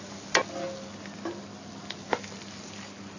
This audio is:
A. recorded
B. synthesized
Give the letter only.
A